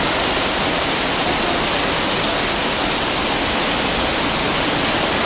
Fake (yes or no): no